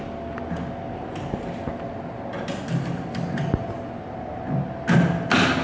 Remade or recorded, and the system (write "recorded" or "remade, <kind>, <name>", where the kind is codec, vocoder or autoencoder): recorded